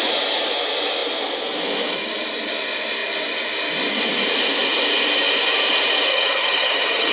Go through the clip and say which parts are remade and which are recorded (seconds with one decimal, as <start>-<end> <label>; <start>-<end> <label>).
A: 0.0-6.1 recorded; 6.1-7.1 remade